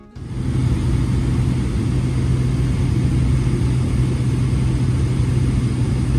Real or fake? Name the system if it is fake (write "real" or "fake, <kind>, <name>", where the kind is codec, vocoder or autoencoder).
real